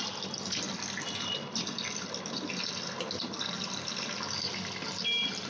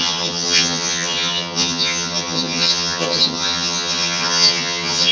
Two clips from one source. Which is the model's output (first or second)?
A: second